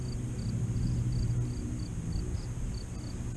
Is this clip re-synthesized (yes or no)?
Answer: no